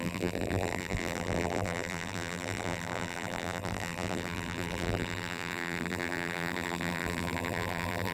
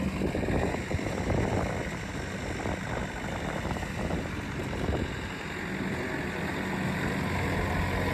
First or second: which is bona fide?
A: second